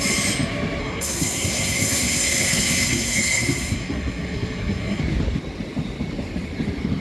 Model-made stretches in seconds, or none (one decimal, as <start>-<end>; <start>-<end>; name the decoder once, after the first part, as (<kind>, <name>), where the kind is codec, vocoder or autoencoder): 0.8-5.0 (codec, SNAC)